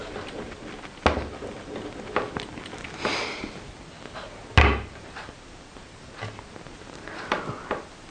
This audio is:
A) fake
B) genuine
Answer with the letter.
B